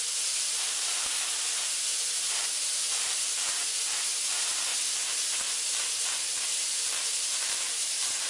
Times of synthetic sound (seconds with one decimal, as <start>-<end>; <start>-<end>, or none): 0.0-8.3